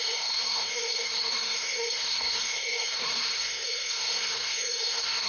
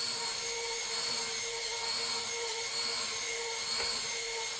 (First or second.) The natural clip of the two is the second